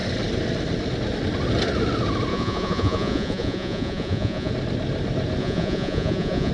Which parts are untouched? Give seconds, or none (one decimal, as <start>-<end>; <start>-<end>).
0.0-2.3; 4.5-5.4